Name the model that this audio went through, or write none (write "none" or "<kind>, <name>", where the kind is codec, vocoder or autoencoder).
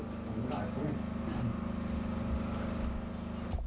none